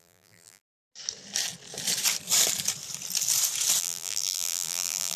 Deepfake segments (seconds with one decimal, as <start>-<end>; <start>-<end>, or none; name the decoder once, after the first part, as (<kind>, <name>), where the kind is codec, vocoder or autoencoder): 0.0-0.7 (vocoder, BigVGAN v2); 3.8-5.2